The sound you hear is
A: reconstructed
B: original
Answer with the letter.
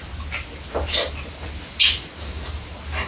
B